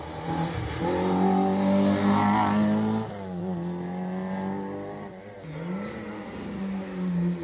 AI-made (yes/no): no